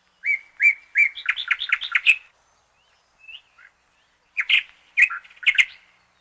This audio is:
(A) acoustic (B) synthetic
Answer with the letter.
A